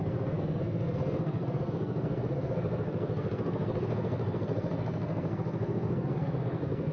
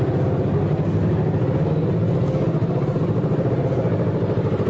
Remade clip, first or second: first